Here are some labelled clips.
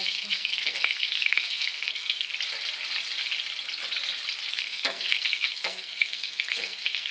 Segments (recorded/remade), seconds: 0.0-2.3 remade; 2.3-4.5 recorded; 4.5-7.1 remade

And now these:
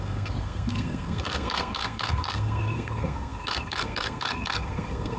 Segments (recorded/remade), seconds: 0.0-5.2 remade

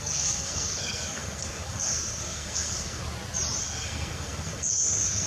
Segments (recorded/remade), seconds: 0.0-3.0 remade; 3.0-3.6 recorded; 3.6-5.3 remade